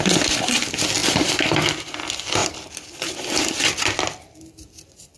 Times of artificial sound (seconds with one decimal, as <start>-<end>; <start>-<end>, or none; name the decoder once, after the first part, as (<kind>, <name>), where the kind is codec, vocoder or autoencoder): 1.0-1.6 (vocoder, BigVGAN v2); 2.4-3.4